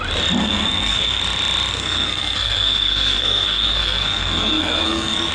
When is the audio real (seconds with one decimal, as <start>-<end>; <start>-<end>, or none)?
0.0-0.4; 1.2-1.7